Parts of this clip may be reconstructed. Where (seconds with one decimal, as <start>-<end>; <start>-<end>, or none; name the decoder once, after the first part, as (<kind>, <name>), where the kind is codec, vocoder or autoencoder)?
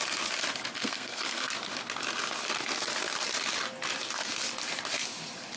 0.8-1.5 (codec, SNAC)